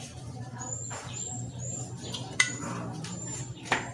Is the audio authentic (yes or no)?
no